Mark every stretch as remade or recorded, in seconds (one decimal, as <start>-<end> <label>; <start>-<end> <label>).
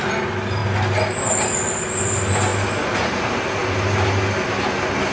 0.0-5.1 recorded